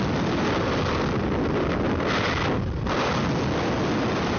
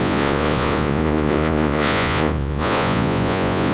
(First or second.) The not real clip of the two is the second